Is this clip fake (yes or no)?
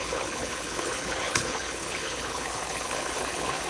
yes